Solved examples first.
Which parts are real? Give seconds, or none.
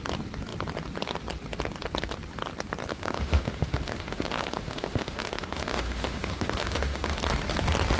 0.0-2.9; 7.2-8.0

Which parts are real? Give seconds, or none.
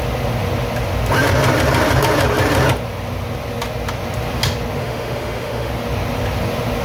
0.0-4.8; 5.7-6.8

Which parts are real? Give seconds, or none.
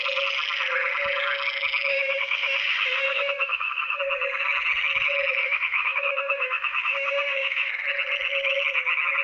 0.0-1.9; 4.0-5.4; 7.7-9.2